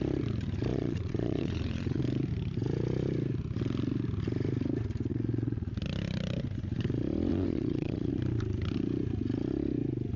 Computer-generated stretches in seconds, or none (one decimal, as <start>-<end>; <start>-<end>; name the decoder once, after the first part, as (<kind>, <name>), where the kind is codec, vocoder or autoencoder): 0.7-2.0 (vocoder, Vocos); 5.1-5.7; 7.3-8.1